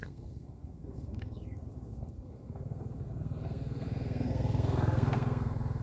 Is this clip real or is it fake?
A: fake